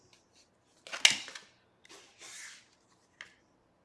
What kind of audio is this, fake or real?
real